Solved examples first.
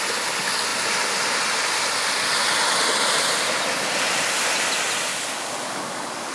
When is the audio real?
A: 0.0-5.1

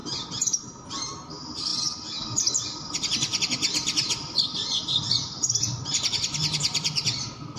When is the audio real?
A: 0.0-7.6

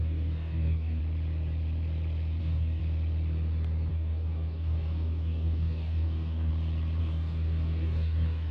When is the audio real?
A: 1.0-2.4; 2.8-3.9; 6.5-7.0

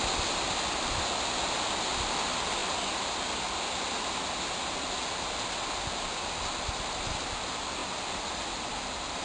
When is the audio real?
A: 0.0-9.2